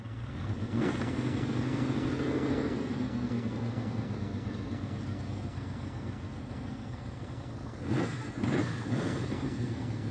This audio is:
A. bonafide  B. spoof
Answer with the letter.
B